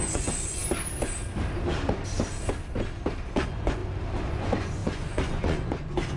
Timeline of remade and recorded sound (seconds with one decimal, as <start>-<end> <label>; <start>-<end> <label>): 0.0-0.6 remade; 0.6-3.3 recorded; 3.3-3.8 remade; 3.8-4.3 recorded; 4.3-6.2 remade

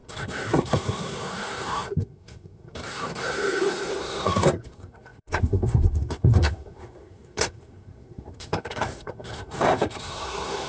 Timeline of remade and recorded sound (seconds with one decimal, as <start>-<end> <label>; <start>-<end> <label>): 0.0-10.7 remade

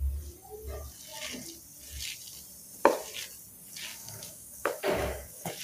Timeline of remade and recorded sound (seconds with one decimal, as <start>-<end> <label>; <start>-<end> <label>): 0.0-3.9 recorded; 3.9-5.6 remade

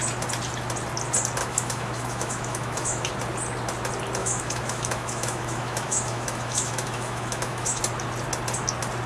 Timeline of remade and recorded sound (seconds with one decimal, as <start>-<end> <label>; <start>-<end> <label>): 0.0-1.4 recorded; 1.4-3.1 remade; 3.1-4.2 recorded; 4.2-7.8 remade; 7.8-9.1 recorded

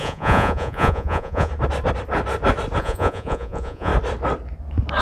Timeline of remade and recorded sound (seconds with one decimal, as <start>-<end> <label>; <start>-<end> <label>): 0.0-1.5 remade; 1.5-2.8 recorded; 2.8-3.9 remade; 3.9-5.0 recorded

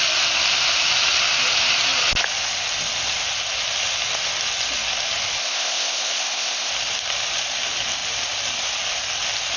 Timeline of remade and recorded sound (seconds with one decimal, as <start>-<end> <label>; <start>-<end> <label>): 0.0-5.4 recorded; 5.4-6.7 remade; 6.7-9.6 recorded

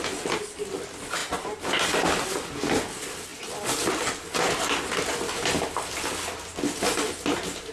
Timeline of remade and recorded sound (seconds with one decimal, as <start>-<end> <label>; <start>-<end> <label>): 0.0-7.7 recorded

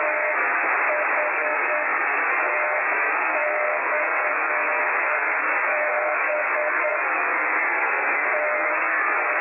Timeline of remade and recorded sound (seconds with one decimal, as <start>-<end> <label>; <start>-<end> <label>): 0.0-0.7 remade; 0.7-1.3 recorded; 1.3-9.4 remade